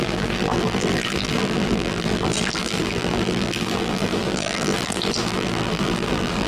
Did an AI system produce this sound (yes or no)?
yes